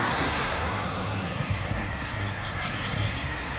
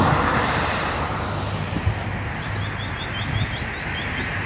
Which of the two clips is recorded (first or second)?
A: second